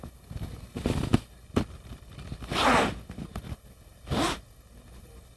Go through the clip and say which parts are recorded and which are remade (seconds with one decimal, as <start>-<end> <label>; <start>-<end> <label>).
0.0-5.4 recorded